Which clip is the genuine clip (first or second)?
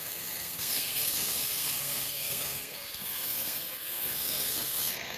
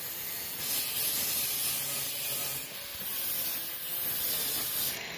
second